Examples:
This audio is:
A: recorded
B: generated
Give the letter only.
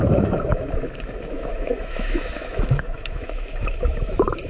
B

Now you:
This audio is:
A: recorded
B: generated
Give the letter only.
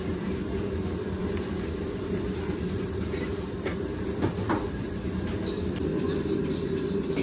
B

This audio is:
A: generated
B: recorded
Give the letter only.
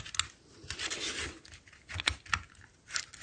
B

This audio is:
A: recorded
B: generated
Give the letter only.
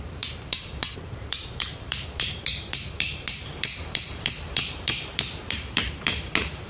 B